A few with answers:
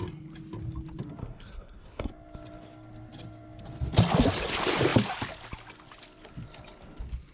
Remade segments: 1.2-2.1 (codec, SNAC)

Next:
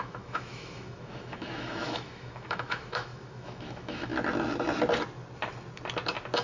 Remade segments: 0.0-4.1 (autoencoder, DAC-VAE)

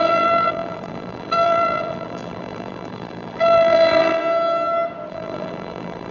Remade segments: 0.0-4.2 (vocoder, BigVGAN v2); 5.1-6.1

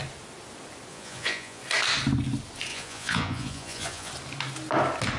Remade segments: 0.9-1.6 (vocoder, Vocos); 2.7-4.1